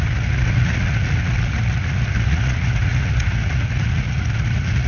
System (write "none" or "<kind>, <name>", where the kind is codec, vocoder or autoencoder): vocoder, Vocos